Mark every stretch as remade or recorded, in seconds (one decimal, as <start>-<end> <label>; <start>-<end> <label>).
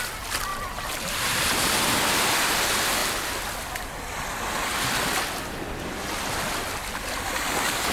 0.0-0.5 recorded; 0.5-1.4 remade; 1.4-7.9 recorded